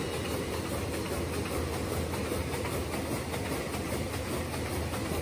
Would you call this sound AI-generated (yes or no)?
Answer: no